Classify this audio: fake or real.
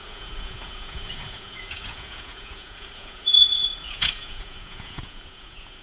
fake